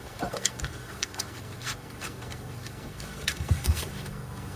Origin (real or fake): fake